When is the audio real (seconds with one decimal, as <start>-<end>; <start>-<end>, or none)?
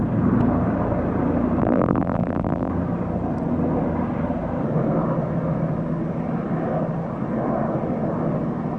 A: 0.0-1.6; 2.7-8.8